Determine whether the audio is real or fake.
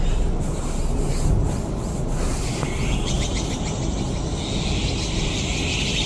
real